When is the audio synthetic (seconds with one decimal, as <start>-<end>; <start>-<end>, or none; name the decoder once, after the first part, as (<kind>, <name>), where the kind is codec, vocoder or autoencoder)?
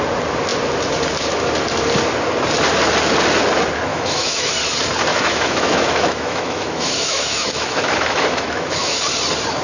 3.9-4.5 (autoencoder, DAC-VAE); 5.1-9.0